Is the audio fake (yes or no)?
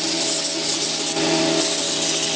no